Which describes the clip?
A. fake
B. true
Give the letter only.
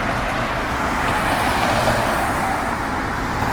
A